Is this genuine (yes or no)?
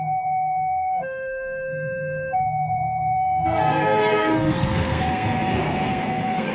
no